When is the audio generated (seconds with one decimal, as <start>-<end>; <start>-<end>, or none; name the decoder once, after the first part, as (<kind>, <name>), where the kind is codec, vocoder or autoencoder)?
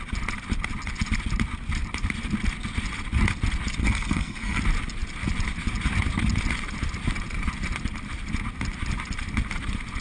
3.8-4.6 (codec, SNAC)